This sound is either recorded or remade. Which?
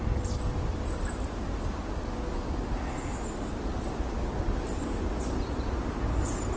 recorded